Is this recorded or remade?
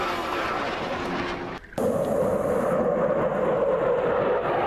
recorded